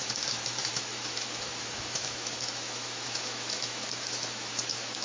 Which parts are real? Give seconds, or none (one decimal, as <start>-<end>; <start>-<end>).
none